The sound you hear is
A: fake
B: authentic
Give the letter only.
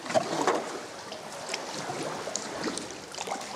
B